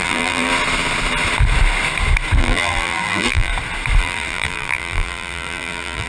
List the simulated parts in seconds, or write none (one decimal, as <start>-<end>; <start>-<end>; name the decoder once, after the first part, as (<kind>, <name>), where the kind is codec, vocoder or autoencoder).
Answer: 0.0-0.5 (vocoder, BigVGAN v2); 2.4-3.5; 4.0-6.1

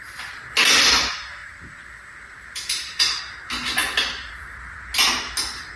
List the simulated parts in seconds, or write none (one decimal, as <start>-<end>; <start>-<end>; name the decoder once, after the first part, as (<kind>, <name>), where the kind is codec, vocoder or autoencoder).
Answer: 1.4-3.2 (vocoder, BigVGAN v2)